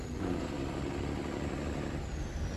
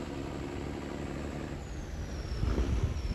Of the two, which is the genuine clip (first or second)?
second